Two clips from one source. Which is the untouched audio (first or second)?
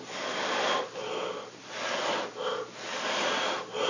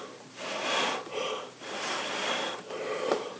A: first